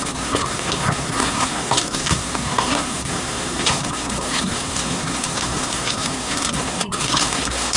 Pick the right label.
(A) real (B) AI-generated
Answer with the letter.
B